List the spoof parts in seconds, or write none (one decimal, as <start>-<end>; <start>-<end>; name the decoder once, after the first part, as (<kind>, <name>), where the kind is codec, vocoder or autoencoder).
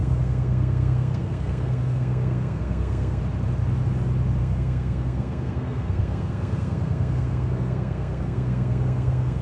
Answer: 0.0-3.2 (codec, SNAC); 4.4-9.4